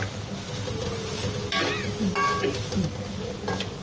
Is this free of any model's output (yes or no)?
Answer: yes